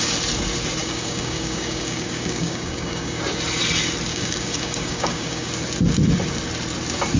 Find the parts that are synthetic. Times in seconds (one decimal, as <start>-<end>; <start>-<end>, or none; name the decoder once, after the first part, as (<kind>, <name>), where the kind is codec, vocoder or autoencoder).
0.8-3.2 (codec, DAC); 4.1-5.5